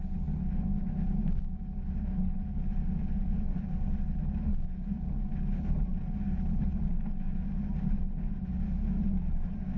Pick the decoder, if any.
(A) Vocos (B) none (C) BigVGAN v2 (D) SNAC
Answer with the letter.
B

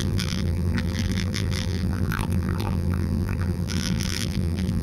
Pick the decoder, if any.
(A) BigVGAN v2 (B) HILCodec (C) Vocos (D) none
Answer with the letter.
A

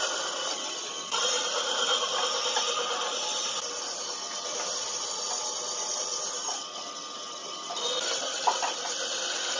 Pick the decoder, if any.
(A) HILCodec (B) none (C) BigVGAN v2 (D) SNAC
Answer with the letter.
B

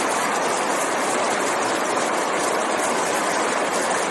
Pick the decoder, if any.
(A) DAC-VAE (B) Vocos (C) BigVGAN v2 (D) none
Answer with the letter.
C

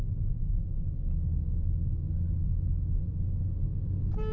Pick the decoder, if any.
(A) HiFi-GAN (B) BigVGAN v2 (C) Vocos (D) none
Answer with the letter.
D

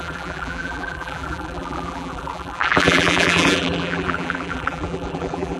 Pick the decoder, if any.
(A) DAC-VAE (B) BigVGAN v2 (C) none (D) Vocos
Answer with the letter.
B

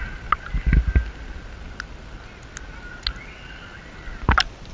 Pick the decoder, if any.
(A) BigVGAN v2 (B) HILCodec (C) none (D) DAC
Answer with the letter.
C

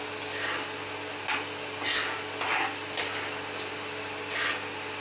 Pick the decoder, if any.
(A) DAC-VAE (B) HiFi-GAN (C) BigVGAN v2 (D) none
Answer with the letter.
D